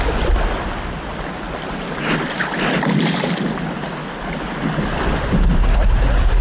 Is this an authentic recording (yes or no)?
yes